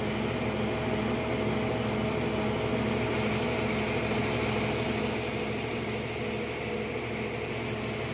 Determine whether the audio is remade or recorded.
recorded